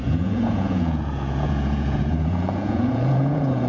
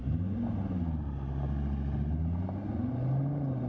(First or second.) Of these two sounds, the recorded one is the second